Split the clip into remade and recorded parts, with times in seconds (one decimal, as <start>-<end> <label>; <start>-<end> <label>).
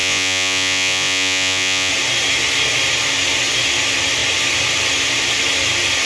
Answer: 0.0-1.9 remade; 1.9-6.1 recorded